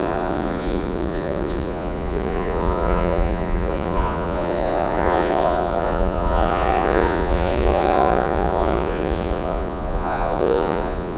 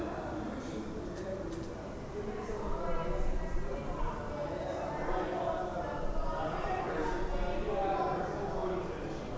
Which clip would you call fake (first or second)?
first